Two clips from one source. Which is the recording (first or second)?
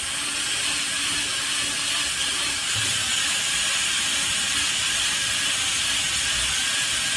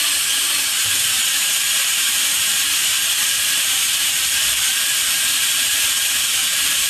first